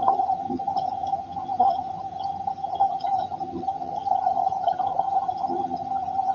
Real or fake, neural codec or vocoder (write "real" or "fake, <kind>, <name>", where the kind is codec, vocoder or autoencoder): fake, vocoder, HiFi-GAN